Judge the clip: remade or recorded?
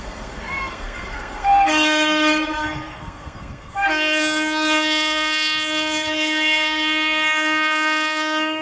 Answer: remade